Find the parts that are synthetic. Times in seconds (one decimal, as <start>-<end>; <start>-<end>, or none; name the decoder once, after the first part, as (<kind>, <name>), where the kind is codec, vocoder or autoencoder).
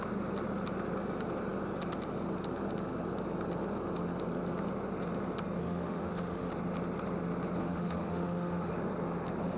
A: 5.6-6.5 (autoencoder, DAC-VAE); 7.6-8.7